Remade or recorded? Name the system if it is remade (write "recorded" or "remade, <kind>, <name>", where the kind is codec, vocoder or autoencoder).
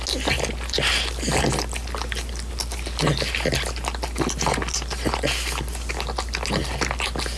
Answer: recorded